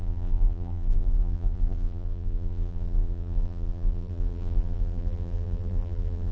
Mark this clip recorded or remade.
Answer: remade